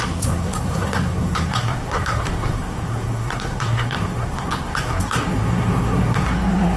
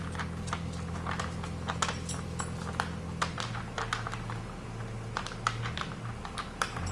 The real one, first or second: second